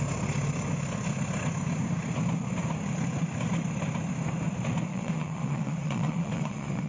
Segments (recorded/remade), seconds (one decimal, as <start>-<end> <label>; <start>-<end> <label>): 0.0-4.9 recorded; 4.9-6.9 remade

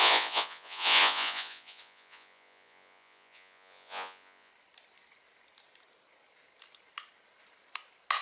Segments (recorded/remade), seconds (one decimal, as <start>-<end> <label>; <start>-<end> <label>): 0.0-4.5 remade; 4.5-8.2 recorded